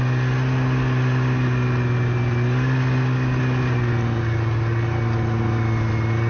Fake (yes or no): no